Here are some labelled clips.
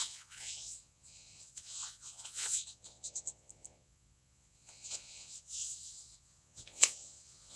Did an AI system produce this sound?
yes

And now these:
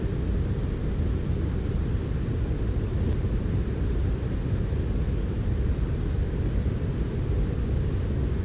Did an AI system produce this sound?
no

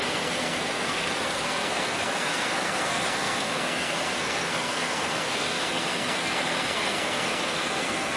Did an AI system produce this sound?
yes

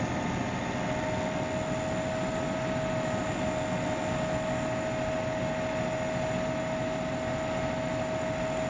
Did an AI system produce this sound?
no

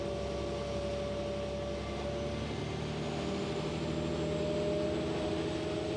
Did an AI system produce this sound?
no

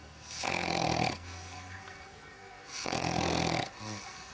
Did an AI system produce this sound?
yes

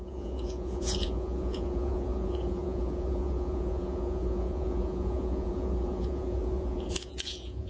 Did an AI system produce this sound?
yes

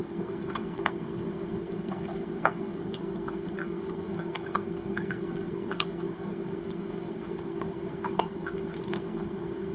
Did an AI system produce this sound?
yes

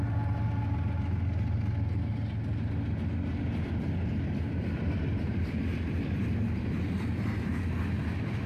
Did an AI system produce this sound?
no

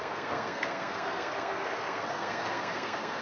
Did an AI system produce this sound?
yes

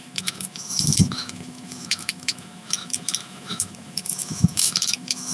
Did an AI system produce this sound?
yes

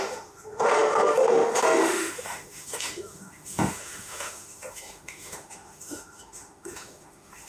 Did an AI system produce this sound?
yes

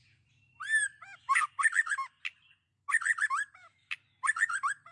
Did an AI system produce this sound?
no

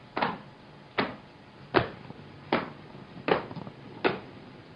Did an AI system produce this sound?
no